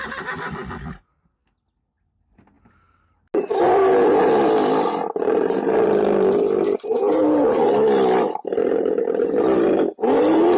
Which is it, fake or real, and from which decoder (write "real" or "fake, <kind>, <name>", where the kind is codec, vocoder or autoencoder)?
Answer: real